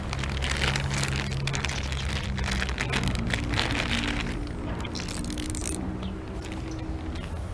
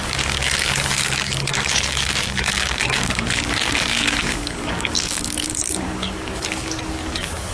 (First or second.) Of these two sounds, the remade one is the second